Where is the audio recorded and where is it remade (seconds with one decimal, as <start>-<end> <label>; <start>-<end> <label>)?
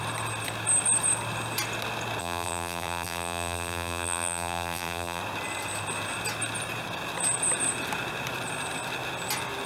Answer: 0.0-2.2 recorded; 2.2-5.2 remade; 5.2-9.7 recorded